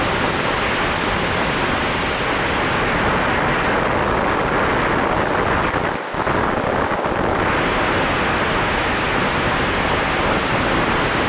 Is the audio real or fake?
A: real